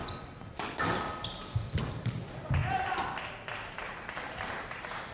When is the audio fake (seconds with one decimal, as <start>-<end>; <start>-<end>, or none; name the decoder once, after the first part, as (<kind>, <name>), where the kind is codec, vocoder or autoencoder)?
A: 2.0-2.6 (vocoder, BigVGAN v2); 3.7-5.1